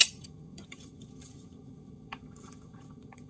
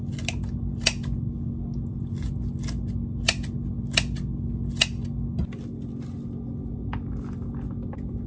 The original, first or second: second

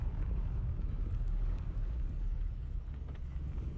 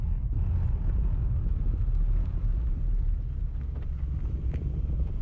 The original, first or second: second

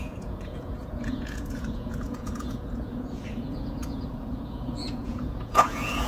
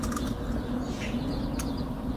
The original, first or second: second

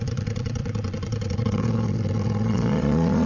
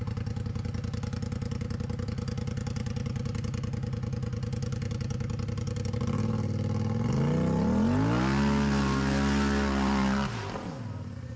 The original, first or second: second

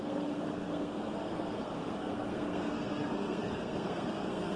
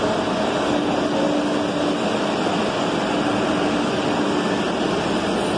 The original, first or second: second